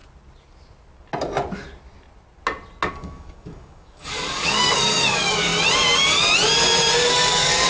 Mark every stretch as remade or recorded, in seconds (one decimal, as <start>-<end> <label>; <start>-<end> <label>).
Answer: 0.0-2.9 recorded; 2.9-5.5 remade; 5.5-7.1 recorded; 7.1-7.7 remade